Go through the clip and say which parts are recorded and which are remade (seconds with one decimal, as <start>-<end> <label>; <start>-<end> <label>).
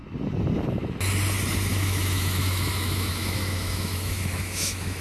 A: 0.0-1.7 recorded; 1.7-5.0 remade